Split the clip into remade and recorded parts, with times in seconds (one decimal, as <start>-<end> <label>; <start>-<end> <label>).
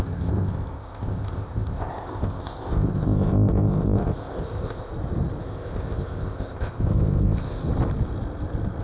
0.0-4.9 remade; 4.9-5.4 recorded; 5.4-7.6 remade; 7.6-8.8 recorded